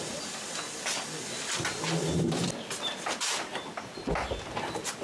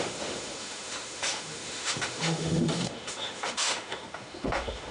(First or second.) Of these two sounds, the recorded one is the first